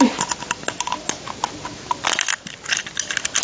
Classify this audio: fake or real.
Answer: real